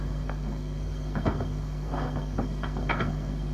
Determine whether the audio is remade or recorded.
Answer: remade